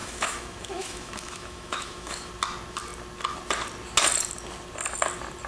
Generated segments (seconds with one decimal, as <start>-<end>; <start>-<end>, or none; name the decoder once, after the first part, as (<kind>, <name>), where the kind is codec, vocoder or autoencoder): 0.0-2.3 (autoencoder, DAC-VAE)